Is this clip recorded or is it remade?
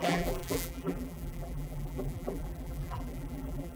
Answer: remade